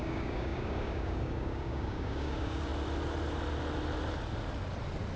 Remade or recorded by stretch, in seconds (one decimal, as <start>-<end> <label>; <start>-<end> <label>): 0.0-2.7 remade; 2.7-5.2 recorded